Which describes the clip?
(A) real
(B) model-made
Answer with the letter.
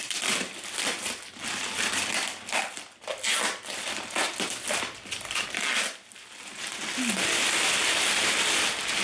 B